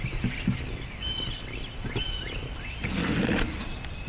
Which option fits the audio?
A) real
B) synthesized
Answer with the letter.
A